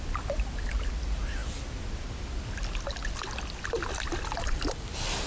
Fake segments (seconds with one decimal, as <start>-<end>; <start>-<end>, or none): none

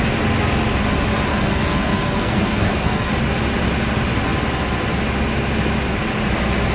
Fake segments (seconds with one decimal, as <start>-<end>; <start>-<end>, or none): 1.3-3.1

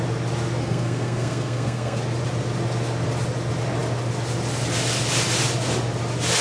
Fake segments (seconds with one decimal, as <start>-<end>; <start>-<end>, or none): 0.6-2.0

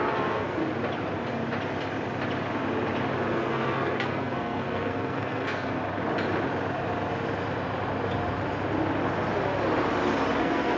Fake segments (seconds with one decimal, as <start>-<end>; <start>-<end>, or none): 0.0-0.6; 3.3-5.8; 10.4-10.8

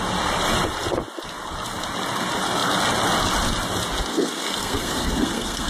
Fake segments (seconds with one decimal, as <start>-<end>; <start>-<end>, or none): 4.1-5.7

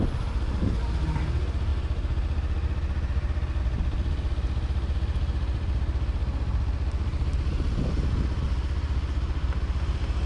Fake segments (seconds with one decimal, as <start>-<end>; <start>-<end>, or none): none